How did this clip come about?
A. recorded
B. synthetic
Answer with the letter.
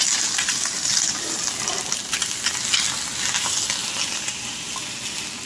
A